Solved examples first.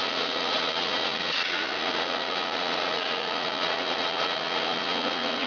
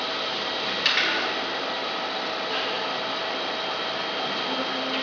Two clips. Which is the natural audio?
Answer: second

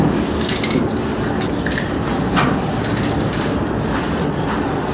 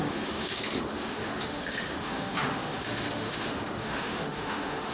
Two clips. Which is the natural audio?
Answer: first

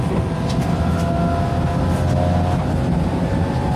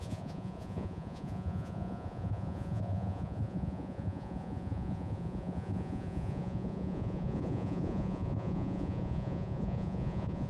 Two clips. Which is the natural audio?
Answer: first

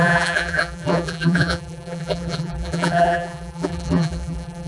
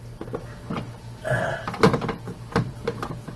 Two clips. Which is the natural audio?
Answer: second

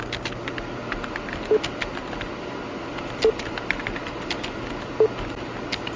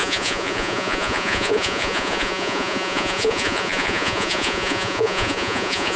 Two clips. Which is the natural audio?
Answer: first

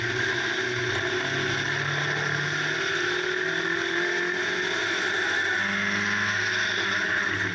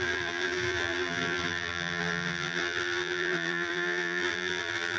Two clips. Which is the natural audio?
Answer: first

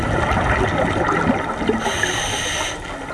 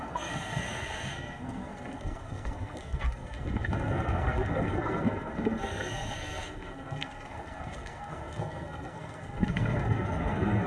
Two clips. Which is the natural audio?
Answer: first